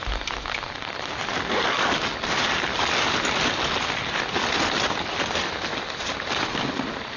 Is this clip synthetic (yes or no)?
no